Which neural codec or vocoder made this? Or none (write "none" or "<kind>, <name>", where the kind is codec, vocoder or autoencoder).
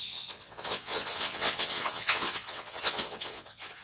vocoder, WaveNeXt